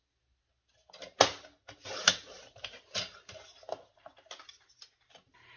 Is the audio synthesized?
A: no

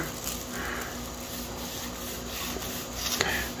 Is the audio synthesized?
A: no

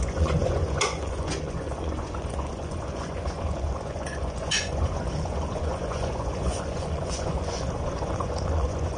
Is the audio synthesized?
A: yes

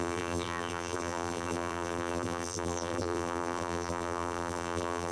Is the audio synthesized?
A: yes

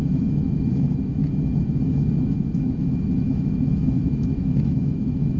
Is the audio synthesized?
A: yes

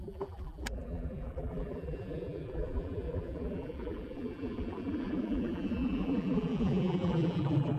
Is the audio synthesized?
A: yes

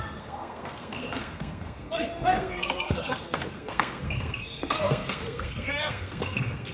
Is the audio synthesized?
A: yes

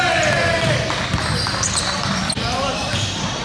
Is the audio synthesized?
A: no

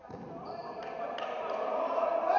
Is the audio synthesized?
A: no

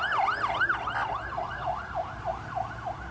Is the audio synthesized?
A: no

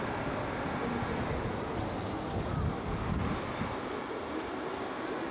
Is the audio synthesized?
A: no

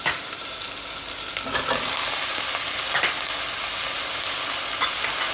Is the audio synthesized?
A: no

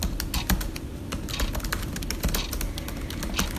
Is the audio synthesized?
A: no